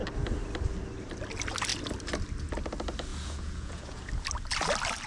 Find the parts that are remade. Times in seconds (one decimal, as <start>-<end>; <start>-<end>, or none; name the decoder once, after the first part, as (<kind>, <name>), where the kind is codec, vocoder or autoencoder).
3.1-4.1 (vocoder, Vocos)

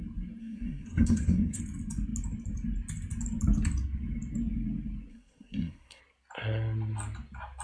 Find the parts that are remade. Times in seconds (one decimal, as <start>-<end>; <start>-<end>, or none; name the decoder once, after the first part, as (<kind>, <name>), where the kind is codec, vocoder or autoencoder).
0.4-1.6 (codec, SNAC); 5.1-6.0

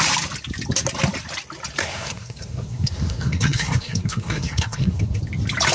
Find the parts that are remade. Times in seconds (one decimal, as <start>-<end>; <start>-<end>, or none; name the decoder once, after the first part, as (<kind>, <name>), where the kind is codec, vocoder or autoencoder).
1.8-5.2 (codec, SNAC)

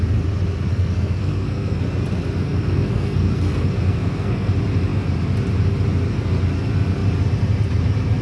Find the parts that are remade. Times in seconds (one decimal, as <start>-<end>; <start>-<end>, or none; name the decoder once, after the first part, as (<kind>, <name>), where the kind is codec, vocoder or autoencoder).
0.7-1.8 (codec, SNAC); 2.4-4.5